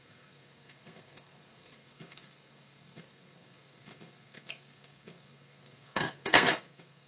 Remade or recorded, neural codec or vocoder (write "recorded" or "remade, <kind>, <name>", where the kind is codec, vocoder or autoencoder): remade, codec, SNAC